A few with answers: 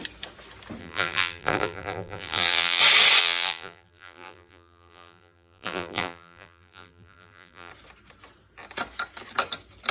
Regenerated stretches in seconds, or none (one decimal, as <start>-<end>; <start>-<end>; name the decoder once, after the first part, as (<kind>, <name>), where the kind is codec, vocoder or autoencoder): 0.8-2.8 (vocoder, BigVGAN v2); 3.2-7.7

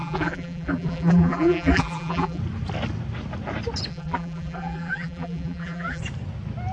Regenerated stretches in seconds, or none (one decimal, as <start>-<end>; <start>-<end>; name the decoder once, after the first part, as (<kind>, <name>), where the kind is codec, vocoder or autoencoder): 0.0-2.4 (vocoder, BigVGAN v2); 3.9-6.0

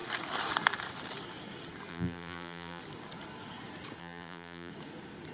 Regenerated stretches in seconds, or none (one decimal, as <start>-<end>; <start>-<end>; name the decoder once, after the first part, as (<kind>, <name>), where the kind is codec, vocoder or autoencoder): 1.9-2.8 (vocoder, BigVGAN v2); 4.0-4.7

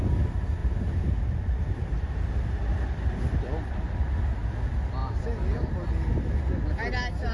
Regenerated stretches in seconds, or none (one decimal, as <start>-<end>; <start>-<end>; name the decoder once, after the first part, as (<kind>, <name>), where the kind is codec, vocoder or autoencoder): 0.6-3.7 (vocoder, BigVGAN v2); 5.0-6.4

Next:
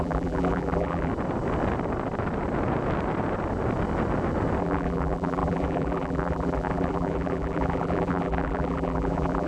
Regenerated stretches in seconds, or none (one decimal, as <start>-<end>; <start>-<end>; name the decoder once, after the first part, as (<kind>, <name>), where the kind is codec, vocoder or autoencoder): 0.0-1.1 (vocoder, BigVGAN v2); 4.6-9.5